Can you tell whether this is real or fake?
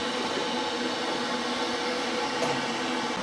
real